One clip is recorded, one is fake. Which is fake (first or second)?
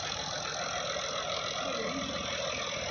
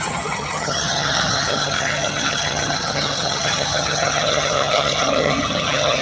second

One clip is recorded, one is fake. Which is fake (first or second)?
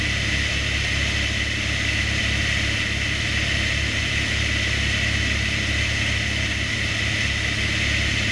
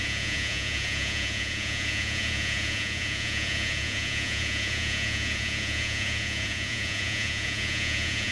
second